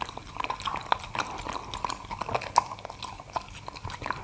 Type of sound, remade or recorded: recorded